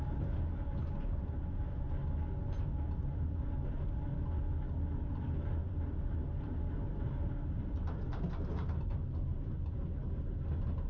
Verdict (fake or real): real